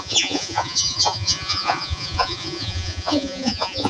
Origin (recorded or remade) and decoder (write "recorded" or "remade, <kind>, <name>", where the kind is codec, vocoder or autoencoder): remade, vocoder, Vocos